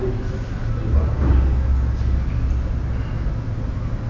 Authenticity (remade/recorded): recorded